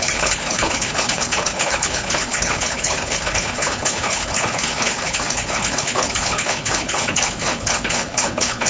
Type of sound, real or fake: fake